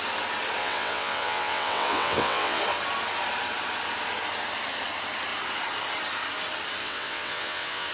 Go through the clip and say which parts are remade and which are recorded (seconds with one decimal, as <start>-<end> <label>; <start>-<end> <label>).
0.0-0.6 recorded; 0.6-2.6 remade; 2.6-6.8 recorded; 6.8-7.9 remade